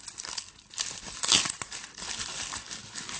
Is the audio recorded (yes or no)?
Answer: yes